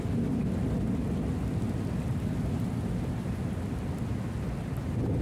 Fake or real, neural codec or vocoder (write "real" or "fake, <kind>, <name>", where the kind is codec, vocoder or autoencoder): real